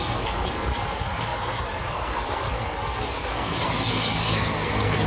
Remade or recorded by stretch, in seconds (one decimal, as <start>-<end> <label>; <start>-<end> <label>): 0.0-5.1 remade